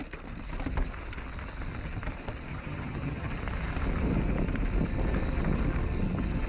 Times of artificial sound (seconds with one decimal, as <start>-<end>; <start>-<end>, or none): 2.5-3.3